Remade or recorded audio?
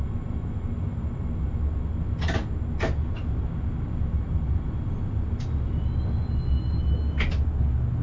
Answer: recorded